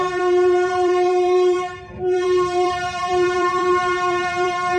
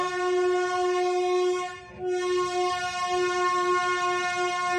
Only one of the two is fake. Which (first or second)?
first